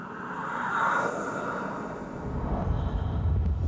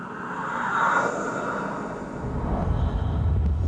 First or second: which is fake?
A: first